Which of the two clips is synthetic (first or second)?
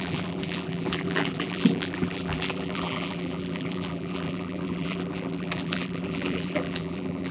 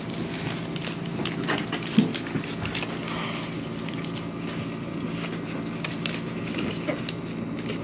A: first